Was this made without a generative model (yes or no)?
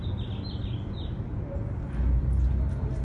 yes